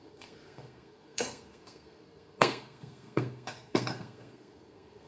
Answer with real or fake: fake